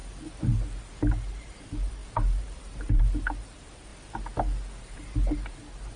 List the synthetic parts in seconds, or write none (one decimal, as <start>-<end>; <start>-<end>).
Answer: 1.1-3.9; 4.8-6.0